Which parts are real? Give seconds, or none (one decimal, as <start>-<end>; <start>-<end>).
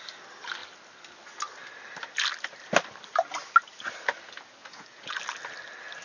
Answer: 0.0-4.6; 5.2-6.0